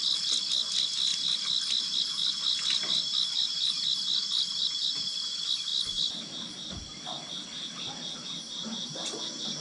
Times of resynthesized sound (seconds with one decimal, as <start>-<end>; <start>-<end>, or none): 1.1-1.8; 2.2-4.9

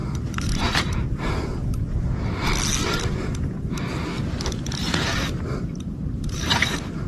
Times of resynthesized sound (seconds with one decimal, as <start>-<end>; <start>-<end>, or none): 0.6-1.6; 3.0-7.1